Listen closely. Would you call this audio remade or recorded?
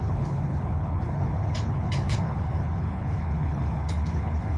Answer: remade